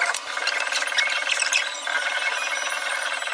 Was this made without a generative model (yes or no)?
yes